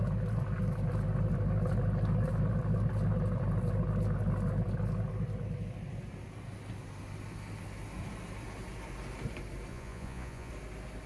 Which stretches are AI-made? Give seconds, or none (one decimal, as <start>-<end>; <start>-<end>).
9.7-10.5